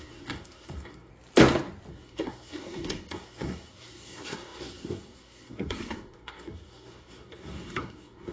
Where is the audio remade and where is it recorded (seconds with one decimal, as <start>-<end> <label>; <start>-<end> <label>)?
0.0-1.1 remade; 1.1-1.9 recorded; 1.9-8.3 remade